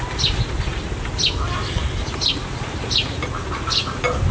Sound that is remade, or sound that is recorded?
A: recorded